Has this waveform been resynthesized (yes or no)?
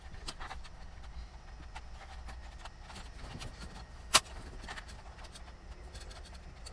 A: no